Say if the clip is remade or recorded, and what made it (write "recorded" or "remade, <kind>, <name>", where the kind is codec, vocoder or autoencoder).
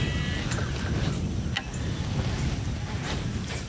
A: recorded